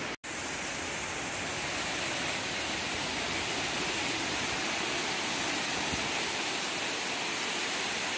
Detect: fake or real real